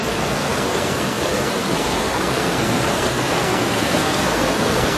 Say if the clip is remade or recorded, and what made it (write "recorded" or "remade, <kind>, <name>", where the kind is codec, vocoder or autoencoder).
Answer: remade, codec, SNAC